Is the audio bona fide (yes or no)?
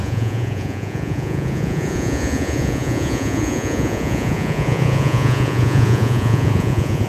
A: no